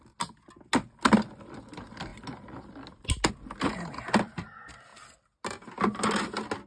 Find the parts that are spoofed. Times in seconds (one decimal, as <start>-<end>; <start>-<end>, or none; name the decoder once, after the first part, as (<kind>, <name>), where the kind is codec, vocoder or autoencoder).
none